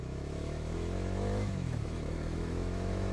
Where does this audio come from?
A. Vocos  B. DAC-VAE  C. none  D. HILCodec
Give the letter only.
B